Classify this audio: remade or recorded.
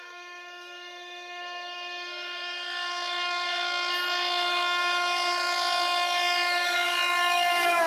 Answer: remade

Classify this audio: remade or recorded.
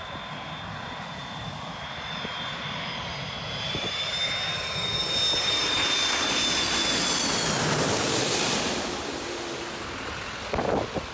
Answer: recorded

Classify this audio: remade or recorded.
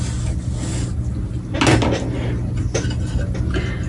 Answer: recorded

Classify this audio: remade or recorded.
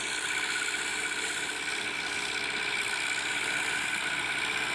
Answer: recorded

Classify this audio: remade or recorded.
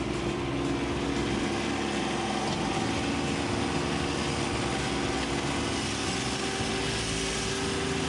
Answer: recorded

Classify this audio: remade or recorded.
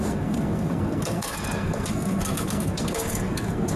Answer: remade